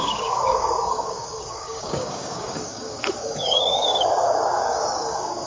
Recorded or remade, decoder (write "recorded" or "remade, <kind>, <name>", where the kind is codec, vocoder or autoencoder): remade, codec, DAC